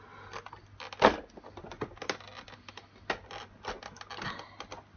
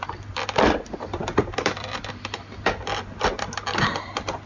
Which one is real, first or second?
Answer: first